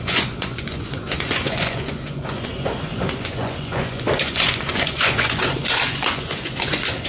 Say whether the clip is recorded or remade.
remade